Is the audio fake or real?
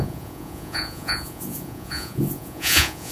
fake